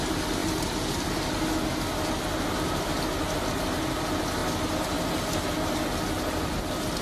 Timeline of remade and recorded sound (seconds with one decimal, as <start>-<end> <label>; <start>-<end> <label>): 0.0-7.0 recorded